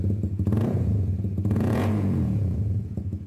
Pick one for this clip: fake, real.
fake